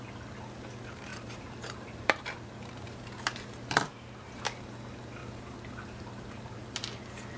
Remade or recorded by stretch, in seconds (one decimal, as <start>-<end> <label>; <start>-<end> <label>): 0.0-1.1 recorded; 1.1-4.4 remade; 4.4-5.2 recorded; 5.2-7.0 remade; 7.0-7.4 recorded